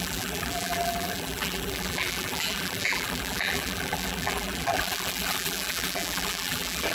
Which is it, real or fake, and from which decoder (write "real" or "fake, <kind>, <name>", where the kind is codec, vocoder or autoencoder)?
fake, vocoder, BigVGAN v2